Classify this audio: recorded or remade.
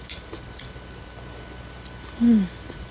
recorded